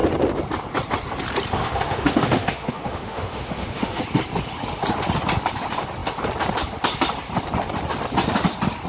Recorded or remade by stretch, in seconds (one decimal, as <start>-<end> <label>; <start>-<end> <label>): 0.0-1.6 recorded; 1.6-4.0 remade; 4.0-8.9 recorded